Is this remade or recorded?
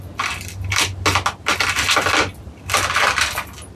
recorded